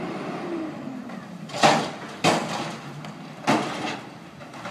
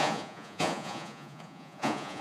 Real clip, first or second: first